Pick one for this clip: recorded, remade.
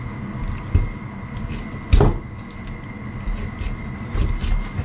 recorded